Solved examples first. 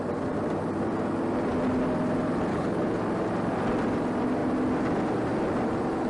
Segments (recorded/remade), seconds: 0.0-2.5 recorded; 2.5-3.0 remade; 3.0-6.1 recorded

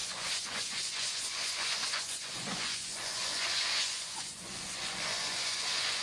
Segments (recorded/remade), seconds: 0.0-6.0 remade

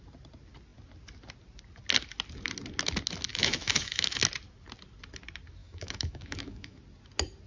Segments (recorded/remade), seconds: 0.0-3.3 recorded; 3.3-4.2 remade; 4.2-5.6 recorded; 5.6-6.8 remade; 6.8-7.5 recorded

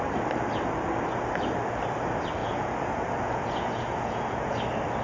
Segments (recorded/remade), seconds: 0.0-2.4 recorded; 2.4-4.5 remade; 4.5-5.0 recorded

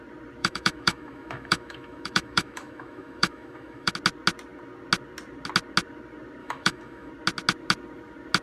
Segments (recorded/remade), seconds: 0.0-0.4 recorded; 0.4-3.9 remade; 3.9-6.4 recorded; 6.4-7.1 remade; 7.1-8.4 recorded

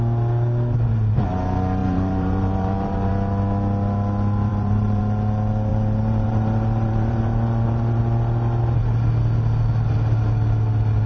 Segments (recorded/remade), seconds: 0.0-1.8 recorded; 1.8-3.1 remade; 3.1-4.5 recorded; 4.5-5.0 remade; 5.0-5.7 recorded; 5.7-8.0 remade; 8.0-11.1 recorded

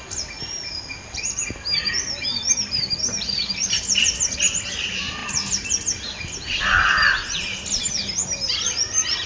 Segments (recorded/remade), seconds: 0.0-9.3 recorded

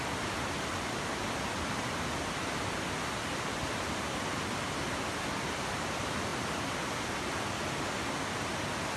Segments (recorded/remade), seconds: 0.0-9.0 recorded